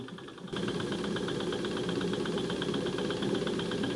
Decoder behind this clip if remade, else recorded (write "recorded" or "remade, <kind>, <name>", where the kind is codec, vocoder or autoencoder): recorded